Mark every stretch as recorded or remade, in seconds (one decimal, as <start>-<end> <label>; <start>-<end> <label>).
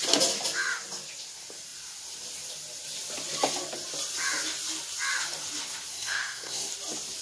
0.0-5.9 recorded; 5.9-6.7 remade; 6.7-7.2 recorded